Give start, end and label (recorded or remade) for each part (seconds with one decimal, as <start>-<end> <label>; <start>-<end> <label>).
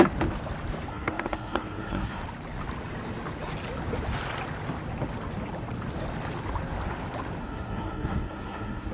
0.0-0.9 recorded; 0.9-2.2 remade; 2.2-7.4 recorded; 7.4-8.9 remade